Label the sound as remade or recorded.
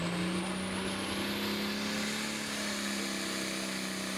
recorded